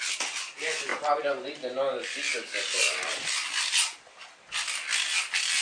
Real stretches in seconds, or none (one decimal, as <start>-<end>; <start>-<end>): 0.0-5.6